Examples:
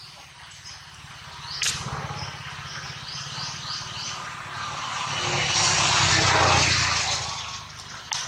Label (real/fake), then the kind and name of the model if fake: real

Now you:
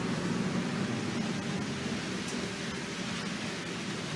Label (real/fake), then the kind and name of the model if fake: real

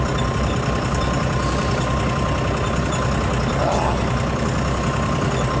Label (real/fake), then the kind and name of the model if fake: real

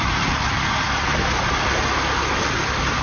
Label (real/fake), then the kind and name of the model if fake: real